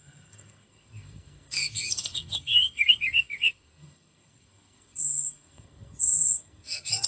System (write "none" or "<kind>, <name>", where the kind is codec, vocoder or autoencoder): codec, SNAC